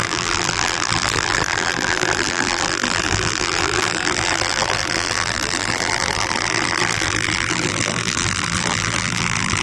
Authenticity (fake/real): fake